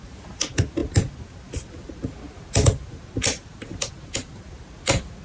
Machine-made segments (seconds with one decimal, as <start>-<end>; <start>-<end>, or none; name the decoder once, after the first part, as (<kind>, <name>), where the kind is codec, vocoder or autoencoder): none